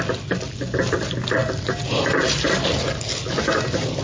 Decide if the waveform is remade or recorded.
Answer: recorded